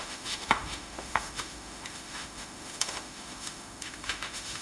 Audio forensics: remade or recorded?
remade